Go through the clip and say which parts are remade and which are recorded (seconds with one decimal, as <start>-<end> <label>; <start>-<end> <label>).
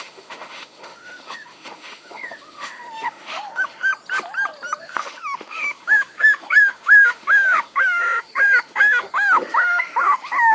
0.0-3.9 remade; 3.9-4.8 recorded; 4.8-10.5 remade